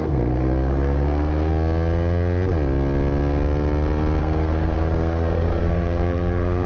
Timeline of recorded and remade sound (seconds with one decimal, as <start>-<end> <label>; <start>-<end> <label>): 0.0-1.5 remade; 1.5-4.2 recorded; 4.2-6.7 remade